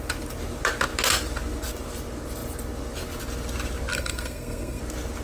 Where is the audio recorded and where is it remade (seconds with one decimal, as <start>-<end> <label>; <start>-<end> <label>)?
0.0-3.9 recorded; 3.9-4.8 remade; 4.8-5.2 recorded